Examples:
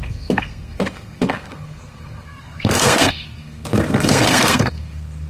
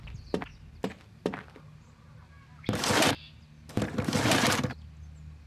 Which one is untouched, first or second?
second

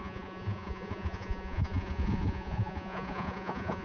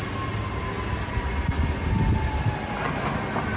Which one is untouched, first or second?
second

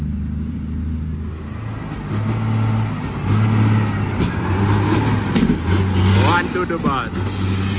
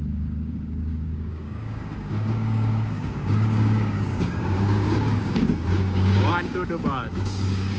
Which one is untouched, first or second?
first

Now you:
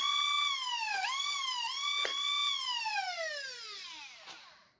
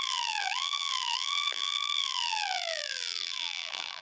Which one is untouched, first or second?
first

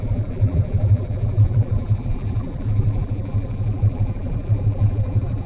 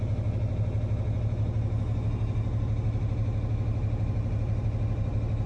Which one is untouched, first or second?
second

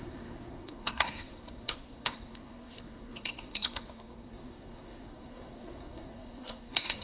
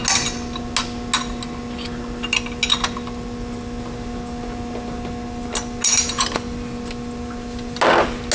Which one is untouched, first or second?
second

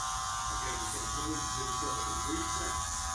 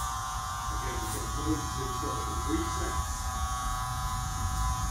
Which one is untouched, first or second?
first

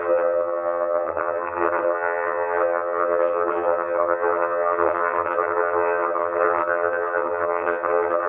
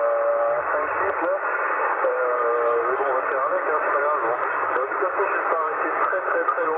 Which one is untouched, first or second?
second